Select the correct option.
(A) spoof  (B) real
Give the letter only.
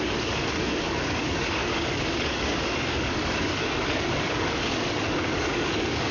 A